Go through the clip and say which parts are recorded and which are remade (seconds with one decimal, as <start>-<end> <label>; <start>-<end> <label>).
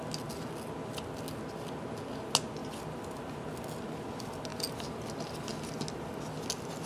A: 0.0-6.9 recorded